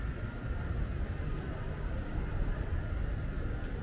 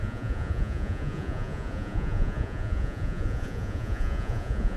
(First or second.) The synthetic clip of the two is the second